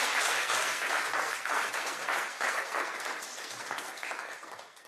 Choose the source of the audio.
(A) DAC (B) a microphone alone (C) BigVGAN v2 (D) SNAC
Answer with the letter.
D